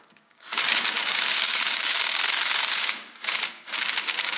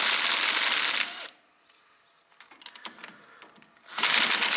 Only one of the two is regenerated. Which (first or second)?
first